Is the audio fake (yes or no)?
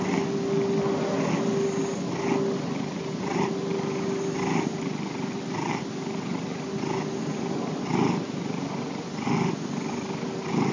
no